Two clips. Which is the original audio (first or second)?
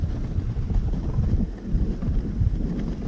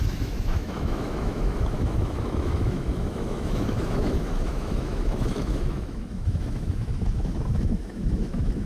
first